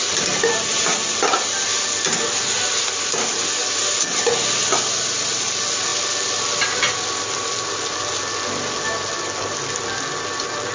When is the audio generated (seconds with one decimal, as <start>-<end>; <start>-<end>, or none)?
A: none